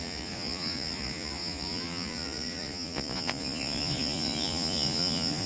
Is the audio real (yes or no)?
no